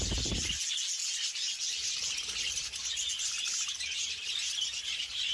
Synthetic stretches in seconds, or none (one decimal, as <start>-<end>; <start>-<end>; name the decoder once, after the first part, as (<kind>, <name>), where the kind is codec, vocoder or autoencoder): none